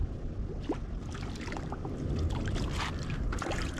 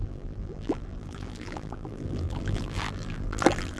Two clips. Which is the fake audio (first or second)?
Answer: second